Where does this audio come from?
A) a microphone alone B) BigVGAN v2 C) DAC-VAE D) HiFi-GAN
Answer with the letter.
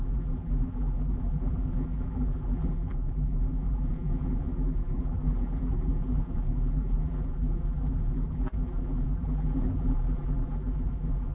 B